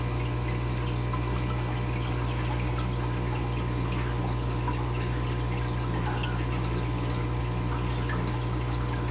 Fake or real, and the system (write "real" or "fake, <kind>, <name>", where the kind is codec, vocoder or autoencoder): real